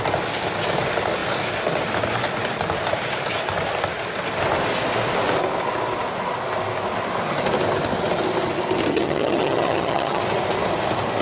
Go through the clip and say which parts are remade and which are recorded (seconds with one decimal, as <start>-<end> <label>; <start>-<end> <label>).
0.0-8.9 recorded; 8.9-10.2 remade; 10.2-11.2 recorded